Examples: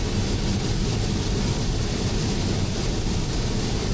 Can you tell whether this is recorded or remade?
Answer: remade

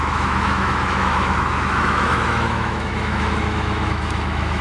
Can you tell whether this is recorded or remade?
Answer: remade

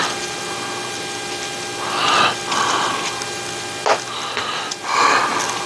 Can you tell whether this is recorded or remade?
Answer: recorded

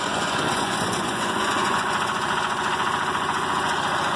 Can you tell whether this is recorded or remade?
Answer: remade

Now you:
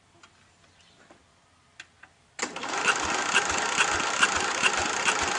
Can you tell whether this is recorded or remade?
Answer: recorded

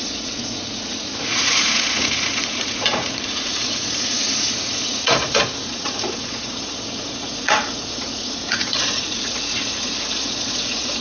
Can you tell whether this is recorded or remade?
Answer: remade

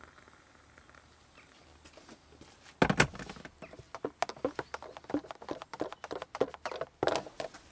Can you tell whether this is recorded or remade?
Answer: recorded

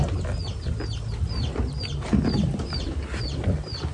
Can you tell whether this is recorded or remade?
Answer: recorded